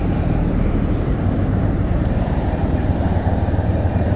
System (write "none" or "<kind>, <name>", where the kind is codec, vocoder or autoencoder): vocoder, BigVGAN v2